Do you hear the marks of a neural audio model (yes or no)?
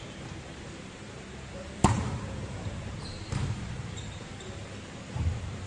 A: yes